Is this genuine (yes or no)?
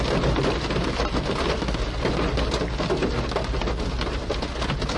yes